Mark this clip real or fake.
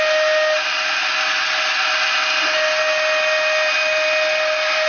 real